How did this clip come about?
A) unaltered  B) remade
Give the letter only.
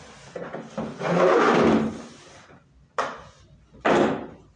A